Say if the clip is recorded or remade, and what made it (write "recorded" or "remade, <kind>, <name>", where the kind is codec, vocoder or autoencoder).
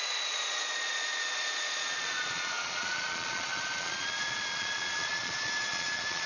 remade, vocoder, Vocos